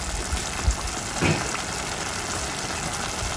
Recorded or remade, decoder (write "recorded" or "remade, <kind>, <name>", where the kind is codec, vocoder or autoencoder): recorded